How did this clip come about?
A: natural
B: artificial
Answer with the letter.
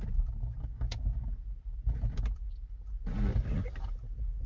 A